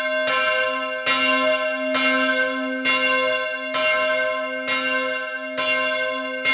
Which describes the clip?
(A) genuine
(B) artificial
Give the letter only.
A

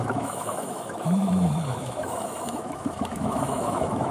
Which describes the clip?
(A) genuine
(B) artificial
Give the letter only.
B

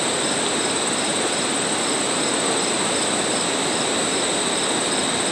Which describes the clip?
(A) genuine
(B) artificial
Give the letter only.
A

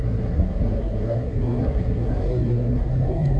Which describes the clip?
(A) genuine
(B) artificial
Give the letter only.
B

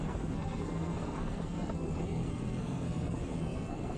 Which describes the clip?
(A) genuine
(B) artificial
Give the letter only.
B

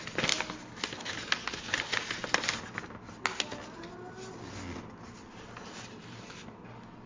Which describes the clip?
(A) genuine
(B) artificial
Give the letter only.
A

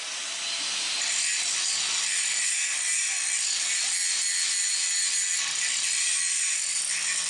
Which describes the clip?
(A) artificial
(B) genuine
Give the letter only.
B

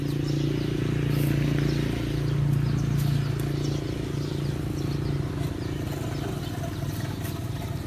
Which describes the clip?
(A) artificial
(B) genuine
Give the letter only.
B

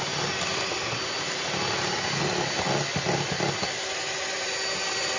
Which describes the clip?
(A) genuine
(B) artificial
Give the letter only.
A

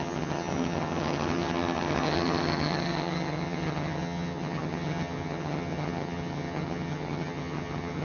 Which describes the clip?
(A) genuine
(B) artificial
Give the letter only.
B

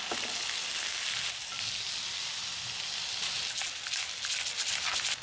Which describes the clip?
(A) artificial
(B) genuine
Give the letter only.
B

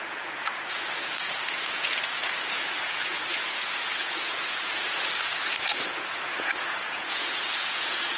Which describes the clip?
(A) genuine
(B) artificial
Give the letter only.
B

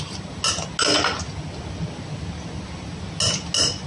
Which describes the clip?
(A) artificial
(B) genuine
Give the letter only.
B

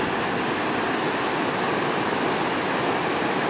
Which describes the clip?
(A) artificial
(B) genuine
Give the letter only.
B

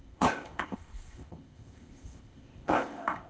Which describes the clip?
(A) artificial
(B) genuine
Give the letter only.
A